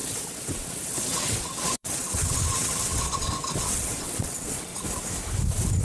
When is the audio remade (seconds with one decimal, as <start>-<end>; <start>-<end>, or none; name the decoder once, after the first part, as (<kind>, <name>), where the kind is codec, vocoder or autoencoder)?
0.0-4.7 (vocoder, WaveNeXt)